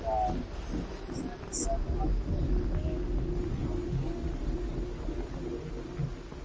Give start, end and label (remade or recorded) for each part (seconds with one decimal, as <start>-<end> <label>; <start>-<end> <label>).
0.0-6.4 recorded